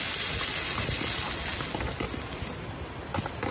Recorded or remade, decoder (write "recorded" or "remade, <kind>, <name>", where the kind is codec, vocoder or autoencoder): recorded